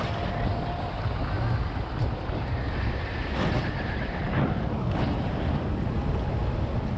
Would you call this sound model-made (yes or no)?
no